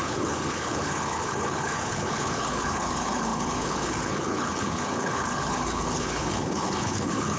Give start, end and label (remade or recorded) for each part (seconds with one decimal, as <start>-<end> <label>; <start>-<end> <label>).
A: 0.0-7.4 remade